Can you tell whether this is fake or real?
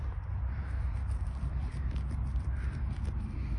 real